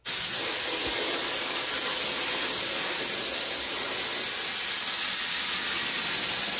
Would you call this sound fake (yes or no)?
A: no